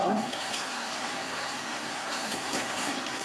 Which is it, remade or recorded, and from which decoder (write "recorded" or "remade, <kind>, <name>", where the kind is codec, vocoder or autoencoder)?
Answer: remade, codec, SNAC